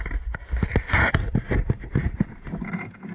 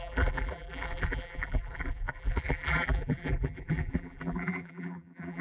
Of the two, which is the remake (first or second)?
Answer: second